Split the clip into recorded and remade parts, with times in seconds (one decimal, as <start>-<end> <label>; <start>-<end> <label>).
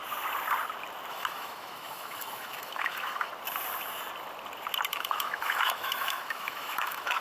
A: 0.0-1.1 recorded; 1.1-3.3 remade; 3.3-4.9 recorded; 4.9-7.2 remade